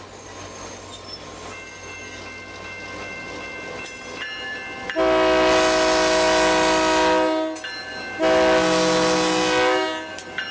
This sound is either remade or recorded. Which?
recorded